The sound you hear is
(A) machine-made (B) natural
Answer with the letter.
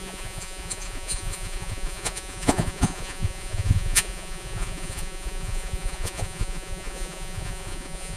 A